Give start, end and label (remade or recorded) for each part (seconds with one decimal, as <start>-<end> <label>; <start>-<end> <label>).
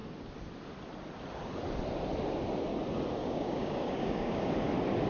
0.0-3.2 recorded; 3.2-4.5 remade; 4.5-5.1 recorded